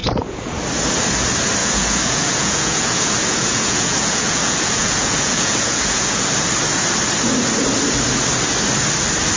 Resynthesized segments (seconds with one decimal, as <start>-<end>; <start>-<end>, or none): 0.0-0.5; 1.6-6.3